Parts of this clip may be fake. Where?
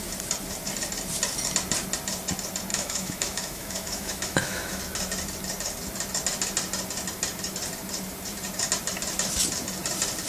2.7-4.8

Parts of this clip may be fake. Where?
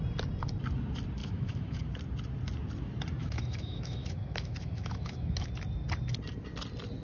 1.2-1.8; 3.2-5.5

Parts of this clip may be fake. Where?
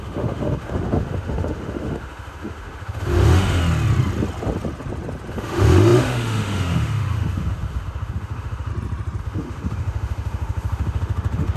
0.0-3.6; 5.3-8.7; 9.2-11.6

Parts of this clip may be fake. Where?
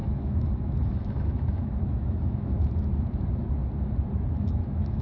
0.0-2.9; 4.5-5.0